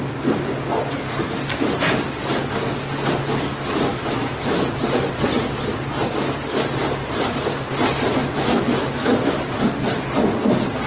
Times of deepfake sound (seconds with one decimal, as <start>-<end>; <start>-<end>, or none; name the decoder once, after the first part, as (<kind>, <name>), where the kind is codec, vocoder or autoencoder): 3.9-4.6 (autoencoder, DAC-VAE); 8.2-9.3